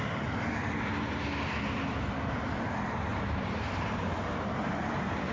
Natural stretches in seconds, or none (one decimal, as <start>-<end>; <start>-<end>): 0.0-3.1